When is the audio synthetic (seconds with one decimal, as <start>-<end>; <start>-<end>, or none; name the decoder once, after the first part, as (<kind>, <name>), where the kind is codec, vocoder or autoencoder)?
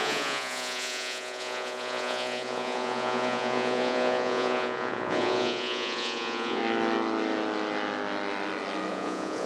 0.0-6.6 (vocoder, Vocos); 8.9-9.5